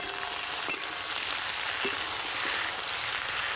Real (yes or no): yes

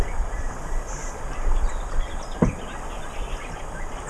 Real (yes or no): yes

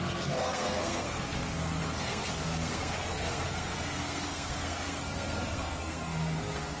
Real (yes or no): no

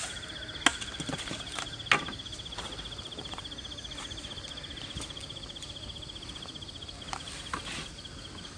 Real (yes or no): yes